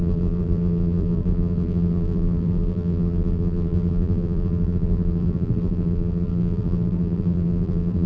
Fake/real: fake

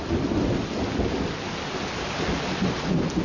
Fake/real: real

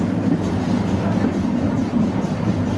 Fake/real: real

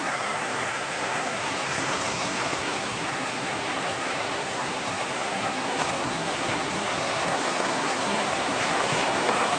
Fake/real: fake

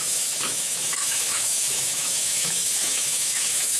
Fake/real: fake